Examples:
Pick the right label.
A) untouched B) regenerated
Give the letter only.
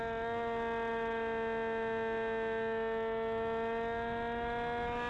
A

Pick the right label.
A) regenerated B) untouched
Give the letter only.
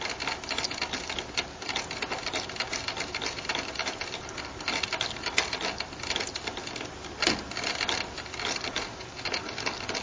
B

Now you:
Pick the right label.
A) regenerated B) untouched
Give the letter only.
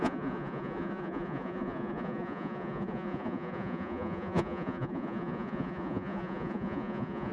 A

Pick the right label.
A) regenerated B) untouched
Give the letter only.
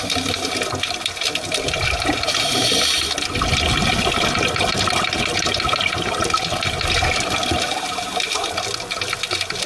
B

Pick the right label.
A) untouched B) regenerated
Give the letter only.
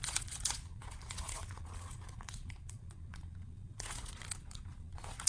B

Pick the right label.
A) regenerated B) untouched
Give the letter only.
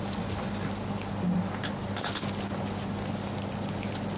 B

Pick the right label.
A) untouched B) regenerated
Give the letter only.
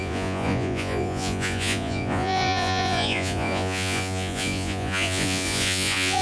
B